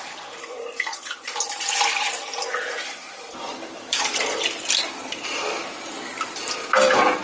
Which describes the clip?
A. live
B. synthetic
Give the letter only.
B